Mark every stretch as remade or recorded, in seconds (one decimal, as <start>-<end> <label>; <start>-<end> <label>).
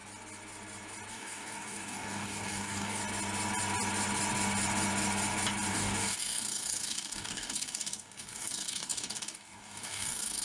0.0-1.1 recorded; 1.1-3.0 remade; 3.0-5.7 recorded; 5.7-10.4 remade